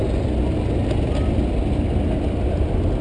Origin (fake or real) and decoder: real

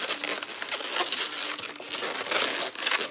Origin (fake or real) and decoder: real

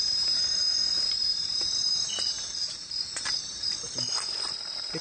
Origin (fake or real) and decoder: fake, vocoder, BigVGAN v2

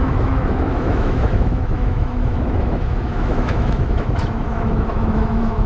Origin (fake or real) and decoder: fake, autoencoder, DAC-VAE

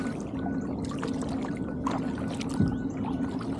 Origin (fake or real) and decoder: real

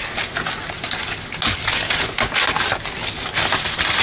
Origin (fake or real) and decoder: real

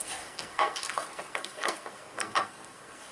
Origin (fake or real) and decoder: fake, codec, SNAC